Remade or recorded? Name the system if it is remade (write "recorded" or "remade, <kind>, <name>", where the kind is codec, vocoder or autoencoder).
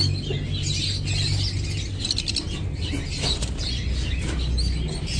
recorded